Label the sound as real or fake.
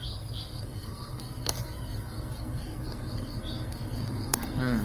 fake